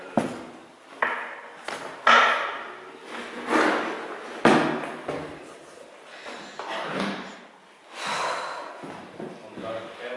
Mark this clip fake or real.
real